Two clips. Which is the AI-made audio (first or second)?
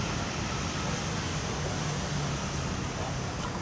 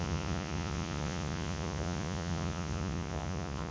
second